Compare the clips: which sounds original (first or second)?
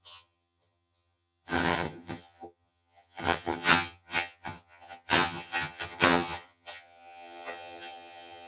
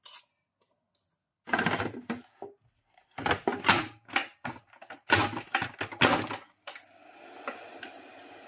second